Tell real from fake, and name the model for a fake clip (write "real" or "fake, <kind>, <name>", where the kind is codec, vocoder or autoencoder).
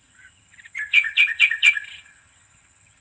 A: fake, vocoder, HiFi-GAN